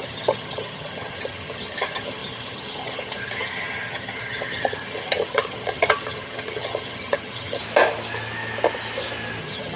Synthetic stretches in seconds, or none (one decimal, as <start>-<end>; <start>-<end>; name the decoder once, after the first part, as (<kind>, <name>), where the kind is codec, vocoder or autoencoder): 0.0-7.6 (vocoder, HiFi-GAN); 9.4-9.8